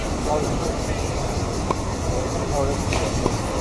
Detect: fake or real fake